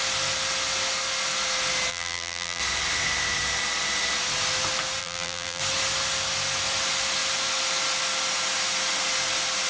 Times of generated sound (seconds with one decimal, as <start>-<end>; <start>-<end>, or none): 1.9-2.6; 5.0-5.6